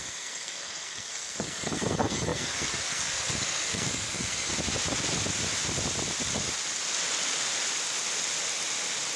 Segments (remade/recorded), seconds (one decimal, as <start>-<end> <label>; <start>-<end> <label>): 0.0-4.5 remade; 4.5-9.2 recorded